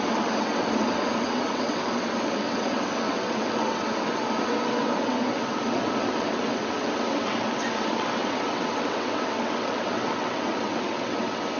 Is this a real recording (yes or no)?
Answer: no